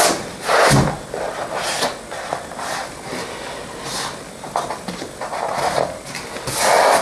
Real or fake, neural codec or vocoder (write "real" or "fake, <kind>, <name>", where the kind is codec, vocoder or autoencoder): real